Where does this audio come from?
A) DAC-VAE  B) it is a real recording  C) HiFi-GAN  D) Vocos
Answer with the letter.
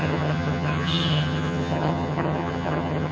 C